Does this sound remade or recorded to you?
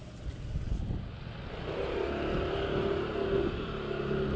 recorded